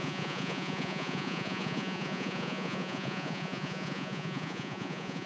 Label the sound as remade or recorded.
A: remade